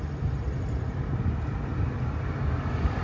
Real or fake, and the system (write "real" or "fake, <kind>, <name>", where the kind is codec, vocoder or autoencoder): real